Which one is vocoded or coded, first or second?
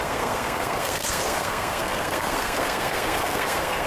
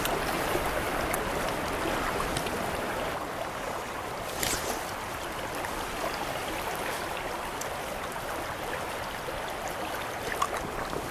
first